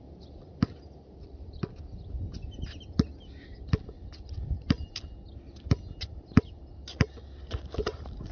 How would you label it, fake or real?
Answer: real